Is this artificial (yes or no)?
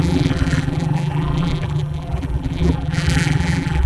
yes